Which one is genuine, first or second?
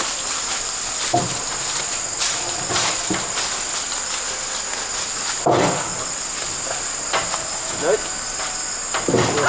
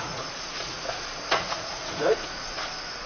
first